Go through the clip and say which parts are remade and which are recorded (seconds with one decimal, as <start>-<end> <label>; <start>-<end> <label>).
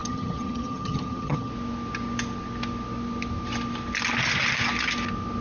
0.0-1.5 remade; 1.5-5.4 recorded